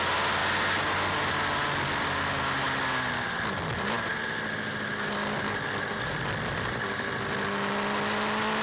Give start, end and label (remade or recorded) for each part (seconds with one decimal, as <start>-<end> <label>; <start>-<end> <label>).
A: 0.0-8.6 recorded